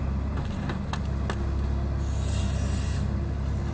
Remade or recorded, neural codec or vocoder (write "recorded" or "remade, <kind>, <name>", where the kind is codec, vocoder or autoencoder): recorded